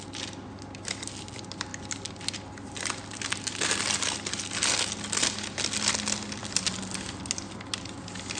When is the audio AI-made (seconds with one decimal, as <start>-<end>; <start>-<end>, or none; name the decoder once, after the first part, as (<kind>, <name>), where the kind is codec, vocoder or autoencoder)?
none